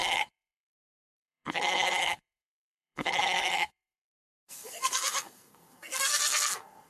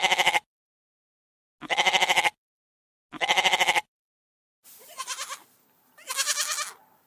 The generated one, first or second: first